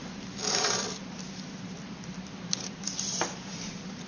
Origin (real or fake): fake